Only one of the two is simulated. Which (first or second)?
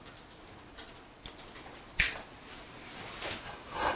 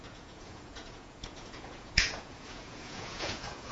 second